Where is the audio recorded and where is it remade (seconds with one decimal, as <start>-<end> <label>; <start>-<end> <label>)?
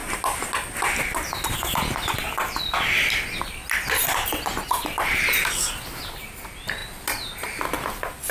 0.0-8.3 recorded